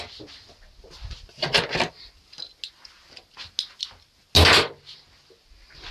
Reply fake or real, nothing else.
real